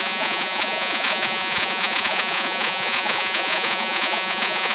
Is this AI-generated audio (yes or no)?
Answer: yes